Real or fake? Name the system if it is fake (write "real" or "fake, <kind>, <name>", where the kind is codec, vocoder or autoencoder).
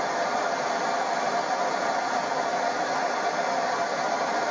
real